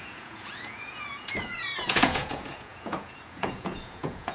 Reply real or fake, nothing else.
fake